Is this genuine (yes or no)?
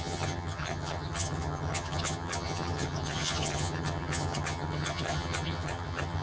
no